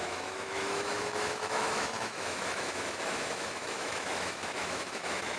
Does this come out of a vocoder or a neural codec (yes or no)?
yes